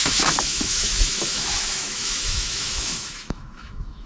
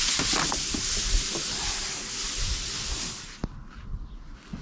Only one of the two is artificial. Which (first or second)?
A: first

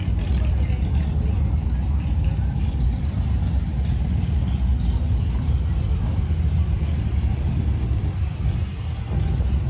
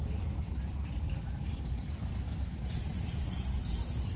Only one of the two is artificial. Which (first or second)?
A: second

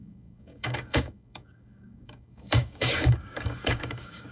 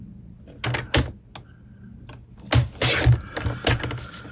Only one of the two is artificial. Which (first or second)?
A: first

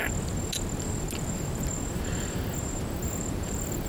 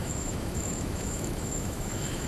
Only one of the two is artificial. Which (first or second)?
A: second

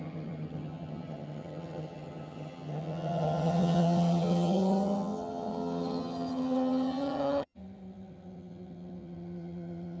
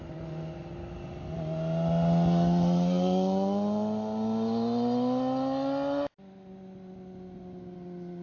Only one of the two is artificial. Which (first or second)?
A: first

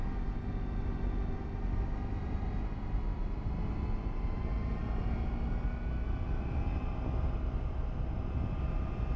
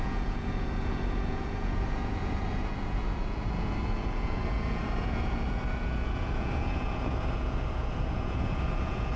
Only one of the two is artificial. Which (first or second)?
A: second